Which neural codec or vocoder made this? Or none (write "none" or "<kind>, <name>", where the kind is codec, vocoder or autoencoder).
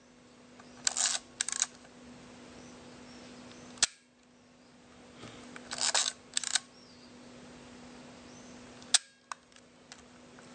none